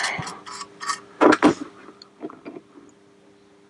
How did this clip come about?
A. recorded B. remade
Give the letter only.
A